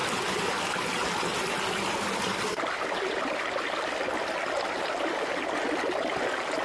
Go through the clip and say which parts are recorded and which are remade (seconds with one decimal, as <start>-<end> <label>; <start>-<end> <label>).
0.0-6.6 recorded